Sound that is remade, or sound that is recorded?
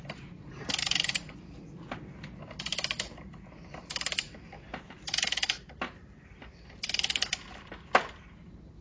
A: recorded